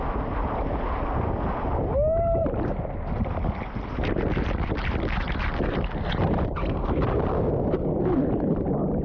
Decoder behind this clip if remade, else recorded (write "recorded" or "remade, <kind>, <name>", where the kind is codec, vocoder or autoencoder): recorded